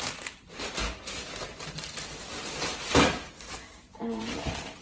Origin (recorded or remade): remade